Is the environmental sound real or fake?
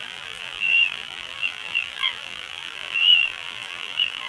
fake